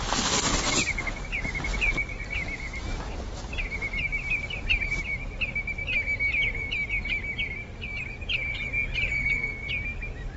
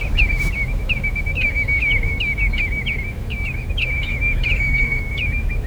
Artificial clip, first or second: second